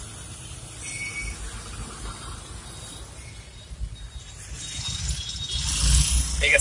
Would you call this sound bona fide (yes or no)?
yes